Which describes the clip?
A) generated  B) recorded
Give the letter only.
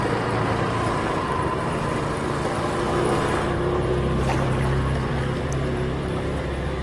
A